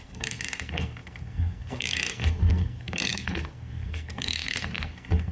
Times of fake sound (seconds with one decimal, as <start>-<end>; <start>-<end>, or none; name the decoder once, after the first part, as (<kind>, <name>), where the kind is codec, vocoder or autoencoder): 0.0-5.3 (codec, SNAC)